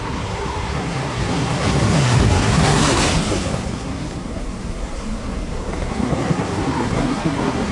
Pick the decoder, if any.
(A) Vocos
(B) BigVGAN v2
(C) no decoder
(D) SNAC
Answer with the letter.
D